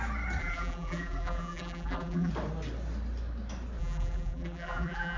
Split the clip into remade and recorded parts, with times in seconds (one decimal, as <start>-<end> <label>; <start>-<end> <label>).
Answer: 0.0-0.4 recorded; 0.4-2.3 remade; 2.3-3.8 recorded; 3.8-5.2 remade